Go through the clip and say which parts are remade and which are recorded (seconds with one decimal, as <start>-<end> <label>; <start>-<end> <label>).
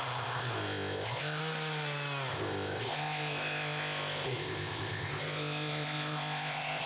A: 0.0-1.4 remade; 1.4-2.3 recorded; 2.3-6.9 remade